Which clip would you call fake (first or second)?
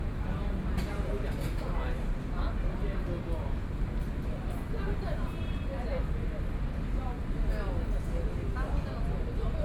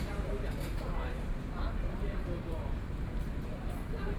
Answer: second